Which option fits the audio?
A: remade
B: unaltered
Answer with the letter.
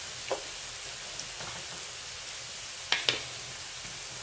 B